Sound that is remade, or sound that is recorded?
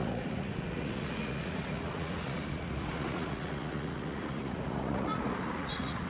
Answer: remade